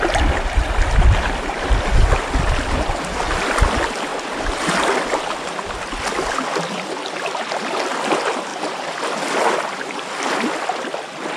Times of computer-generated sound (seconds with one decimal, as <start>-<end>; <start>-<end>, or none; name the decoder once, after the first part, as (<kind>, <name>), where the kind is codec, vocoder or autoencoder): none